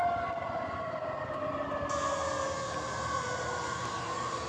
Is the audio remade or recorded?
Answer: recorded